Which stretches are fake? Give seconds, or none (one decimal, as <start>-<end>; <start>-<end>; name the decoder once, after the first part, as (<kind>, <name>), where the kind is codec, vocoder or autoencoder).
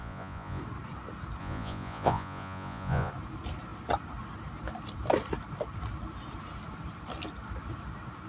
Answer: 0.0-0.6 (vocoder, Vocos); 1.4-3.1